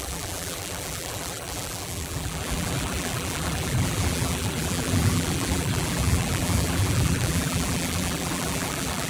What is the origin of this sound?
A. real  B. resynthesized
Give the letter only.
B